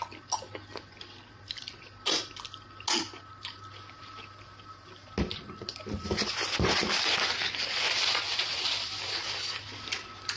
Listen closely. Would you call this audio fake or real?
real